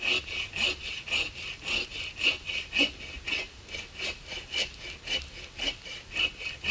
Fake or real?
real